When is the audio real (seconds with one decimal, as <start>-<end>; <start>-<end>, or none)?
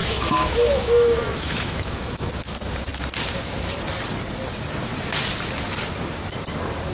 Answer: 2.3-6.9